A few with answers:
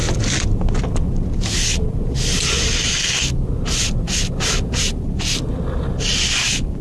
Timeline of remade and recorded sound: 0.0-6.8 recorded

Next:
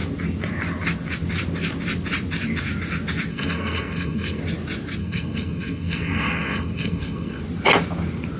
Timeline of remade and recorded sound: 0.0-3.3 recorded; 3.3-4.4 remade; 4.4-5.0 recorded; 5.0-7.4 remade; 7.4-8.4 recorded

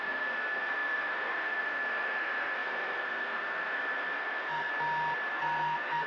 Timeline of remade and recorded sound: 0.0-4.7 remade; 4.7-5.3 recorded; 5.3-6.1 remade

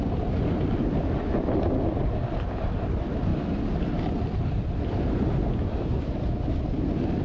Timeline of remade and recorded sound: 0.0-7.2 recorded